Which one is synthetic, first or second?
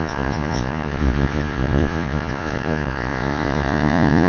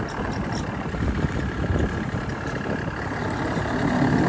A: first